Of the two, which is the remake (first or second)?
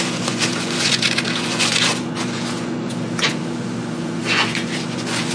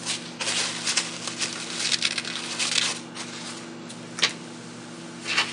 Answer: first